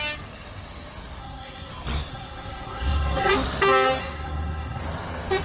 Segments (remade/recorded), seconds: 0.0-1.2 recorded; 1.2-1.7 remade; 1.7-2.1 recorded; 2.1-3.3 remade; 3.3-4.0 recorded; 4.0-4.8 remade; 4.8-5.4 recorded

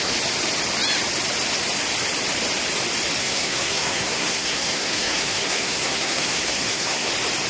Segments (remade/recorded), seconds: 0.0-3.2 recorded; 3.2-7.1 remade; 7.1-7.5 recorded